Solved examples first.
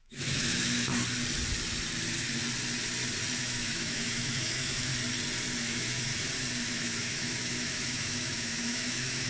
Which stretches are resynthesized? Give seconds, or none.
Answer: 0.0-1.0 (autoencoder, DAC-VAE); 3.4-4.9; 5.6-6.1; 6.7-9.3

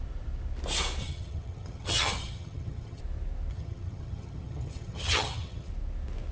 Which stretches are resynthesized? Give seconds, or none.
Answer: 1.0-3.0 (vocoder, HiFi-GAN); 3.5-5.7

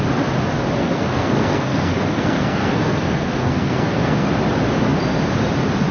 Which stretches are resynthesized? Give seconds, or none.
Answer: 0.8-4.3 (codec, SNAC)

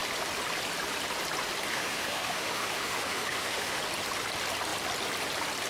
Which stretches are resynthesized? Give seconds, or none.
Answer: 1.7-3.8 (autoencoder, DAC-VAE)

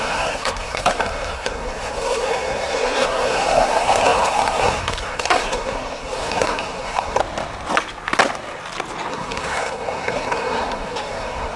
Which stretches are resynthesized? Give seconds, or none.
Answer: 0.0-7.2 (codec, SNAC); 9.1-11.6

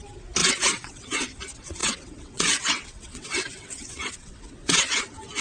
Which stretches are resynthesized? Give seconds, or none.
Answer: 0.4-1.4 (vocoder, WaveNeXt); 1.8-5.0

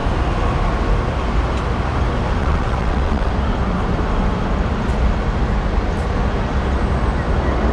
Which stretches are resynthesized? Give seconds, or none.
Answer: 2.4-3.3 (vocoder, WaveNeXt)

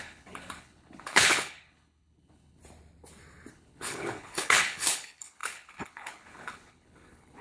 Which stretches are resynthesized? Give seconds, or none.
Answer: 0.0-2.6 (codec, HILCodec); 3.5-7.4